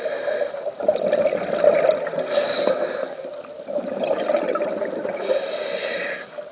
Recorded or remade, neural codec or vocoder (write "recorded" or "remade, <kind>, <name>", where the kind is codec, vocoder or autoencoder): recorded